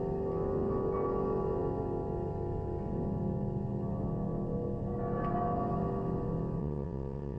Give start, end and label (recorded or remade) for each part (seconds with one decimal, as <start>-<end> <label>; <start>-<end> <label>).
0.0-6.6 recorded; 6.6-7.4 remade